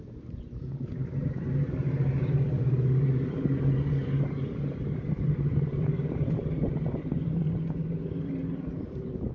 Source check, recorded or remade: remade